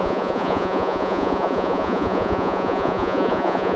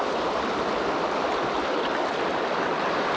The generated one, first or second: first